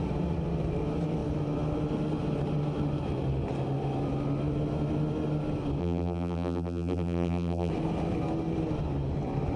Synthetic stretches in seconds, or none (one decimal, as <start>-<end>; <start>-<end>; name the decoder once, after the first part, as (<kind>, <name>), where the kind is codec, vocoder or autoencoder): 5.8-7.7 (vocoder, BigVGAN v2)